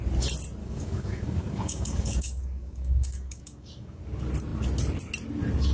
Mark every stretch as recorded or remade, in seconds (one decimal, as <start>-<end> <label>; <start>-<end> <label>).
0.0-0.6 recorded; 0.6-4.0 remade; 4.0-5.7 recorded